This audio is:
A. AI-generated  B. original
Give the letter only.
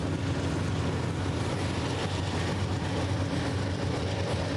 B